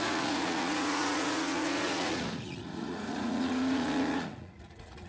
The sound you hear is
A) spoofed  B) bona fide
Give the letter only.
A